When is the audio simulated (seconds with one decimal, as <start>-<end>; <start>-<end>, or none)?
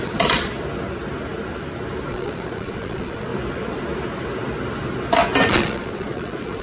0.0-0.5; 2.1-3.3; 5.5-6.6